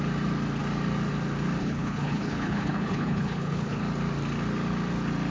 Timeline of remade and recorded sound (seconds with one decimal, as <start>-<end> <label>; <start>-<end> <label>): 0.0-1.6 recorded; 1.6-3.8 remade; 3.8-5.3 recorded

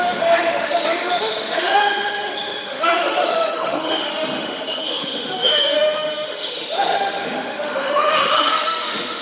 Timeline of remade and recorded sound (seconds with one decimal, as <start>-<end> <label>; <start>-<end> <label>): 0.0-9.2 remade